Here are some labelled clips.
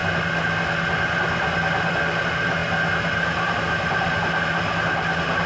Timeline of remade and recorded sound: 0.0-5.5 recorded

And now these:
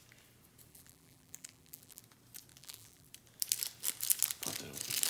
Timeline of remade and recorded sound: 0.0-0.7 recorded; 0.7-2.0 remade; 2.0-2.5 recorded; 2.5-3.1 remade; 3.1-5.1 recorded

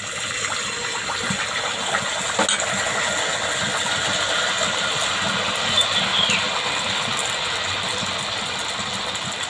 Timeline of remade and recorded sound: 0.0-9.5 recorded